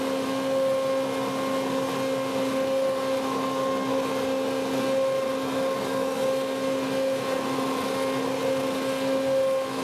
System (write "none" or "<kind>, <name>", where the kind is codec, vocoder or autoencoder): none